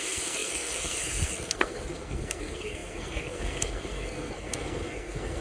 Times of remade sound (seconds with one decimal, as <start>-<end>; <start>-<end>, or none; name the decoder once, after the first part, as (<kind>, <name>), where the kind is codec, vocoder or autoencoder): 0.0-5.4 (codec, SNAC)